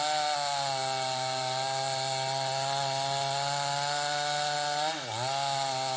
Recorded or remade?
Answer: recorded